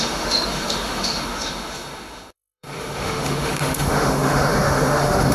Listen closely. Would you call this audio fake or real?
fake